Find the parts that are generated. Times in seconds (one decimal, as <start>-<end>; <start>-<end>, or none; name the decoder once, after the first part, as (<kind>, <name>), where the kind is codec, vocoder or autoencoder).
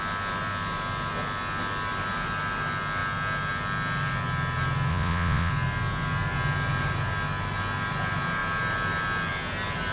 4.9-5.5 (vocoder, Vocos)